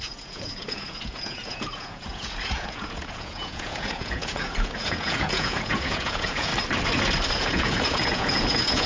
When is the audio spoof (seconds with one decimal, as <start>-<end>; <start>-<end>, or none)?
0.0-6.5; 7.3-8.9